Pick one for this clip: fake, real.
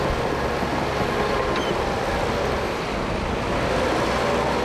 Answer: real